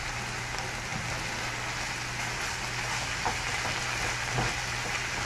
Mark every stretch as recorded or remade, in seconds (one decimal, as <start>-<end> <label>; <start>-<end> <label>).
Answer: 0.0-5.2 recorded